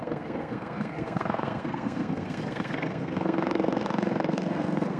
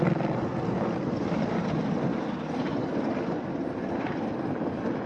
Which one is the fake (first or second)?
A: first